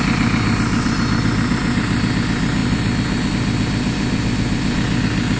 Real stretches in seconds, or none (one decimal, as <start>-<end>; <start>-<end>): 0.0-5.4